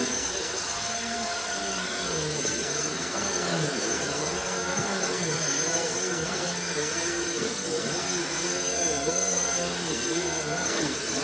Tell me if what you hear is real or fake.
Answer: fake